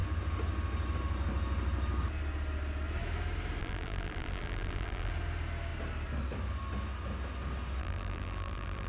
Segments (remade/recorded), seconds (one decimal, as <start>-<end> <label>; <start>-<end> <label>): 0.0-3.6 recorded; 3.6-5.1 remade; 5.1-7.8 recorded; 7.8-8.9 remade